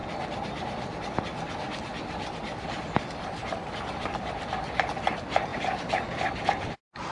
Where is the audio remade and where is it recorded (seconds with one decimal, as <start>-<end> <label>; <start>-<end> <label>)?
0.0-7.1 recorded